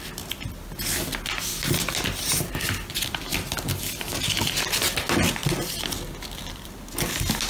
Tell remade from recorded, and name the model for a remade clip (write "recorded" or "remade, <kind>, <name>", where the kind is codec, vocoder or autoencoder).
recorded